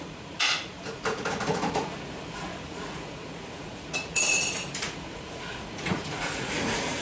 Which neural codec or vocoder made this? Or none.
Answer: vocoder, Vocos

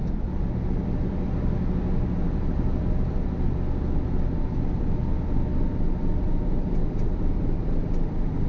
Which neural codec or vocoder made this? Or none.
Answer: none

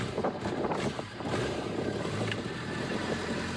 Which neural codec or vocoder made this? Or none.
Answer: vocoder, BigVGAN v2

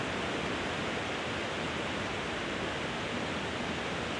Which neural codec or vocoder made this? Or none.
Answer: none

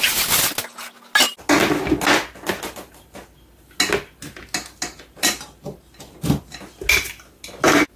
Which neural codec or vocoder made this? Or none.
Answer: none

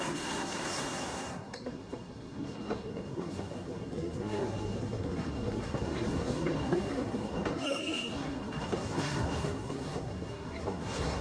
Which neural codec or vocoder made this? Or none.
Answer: codec, SNAC